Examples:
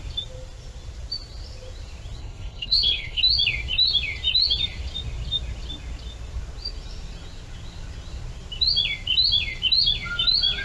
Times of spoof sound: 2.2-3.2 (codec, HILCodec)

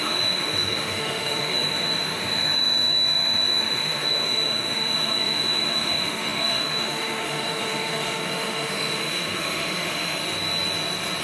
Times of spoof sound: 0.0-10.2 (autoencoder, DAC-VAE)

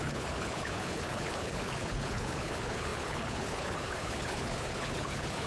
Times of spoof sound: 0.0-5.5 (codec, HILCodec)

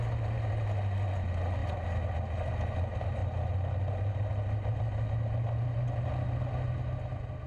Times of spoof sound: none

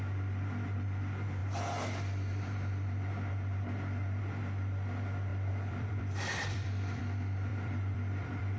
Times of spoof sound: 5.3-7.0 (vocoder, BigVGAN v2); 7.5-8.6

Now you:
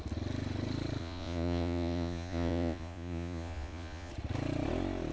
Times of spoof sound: 1.0-4.1 (vocoder, Vocos)

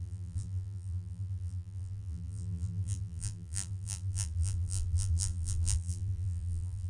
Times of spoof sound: 0.0-6.9 (vocoder, BigVGAN v2)